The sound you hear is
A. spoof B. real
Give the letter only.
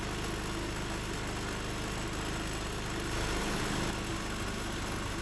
B